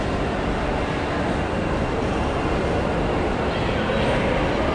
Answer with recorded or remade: recorded